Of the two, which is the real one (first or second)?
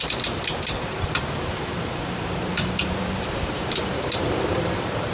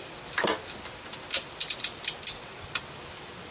second